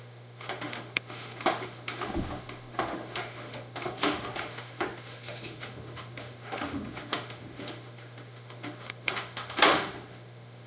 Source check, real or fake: fake